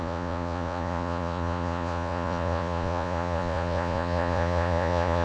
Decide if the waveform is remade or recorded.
remade